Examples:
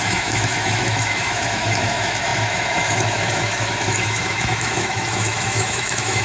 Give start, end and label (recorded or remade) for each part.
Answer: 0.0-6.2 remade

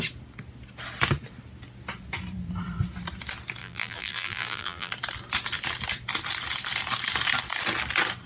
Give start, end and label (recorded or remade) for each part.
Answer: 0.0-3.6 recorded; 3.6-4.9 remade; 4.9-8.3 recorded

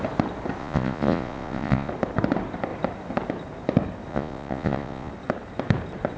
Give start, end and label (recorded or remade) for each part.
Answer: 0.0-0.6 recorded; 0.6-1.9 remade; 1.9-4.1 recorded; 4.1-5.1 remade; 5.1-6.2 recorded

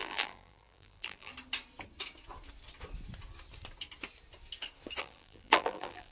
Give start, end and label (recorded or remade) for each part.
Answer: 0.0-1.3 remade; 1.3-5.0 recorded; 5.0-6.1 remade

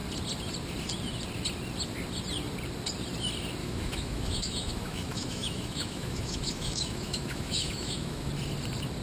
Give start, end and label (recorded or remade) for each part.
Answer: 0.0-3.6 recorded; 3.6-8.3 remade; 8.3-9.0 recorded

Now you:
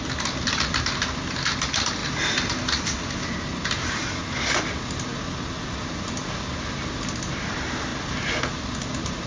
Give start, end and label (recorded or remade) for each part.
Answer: 0.0-9.3 recorded

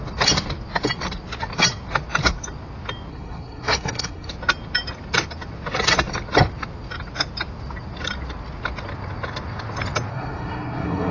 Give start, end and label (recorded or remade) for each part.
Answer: 0.0-3.1 recorded; 3.1-4.3 remade; 4.3-10.1 recorded; 10.1-11.1 remade